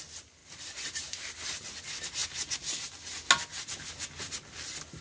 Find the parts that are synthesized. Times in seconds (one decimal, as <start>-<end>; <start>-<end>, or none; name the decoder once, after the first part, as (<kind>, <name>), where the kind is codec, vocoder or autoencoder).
none